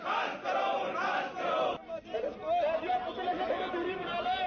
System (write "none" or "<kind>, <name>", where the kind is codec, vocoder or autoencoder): none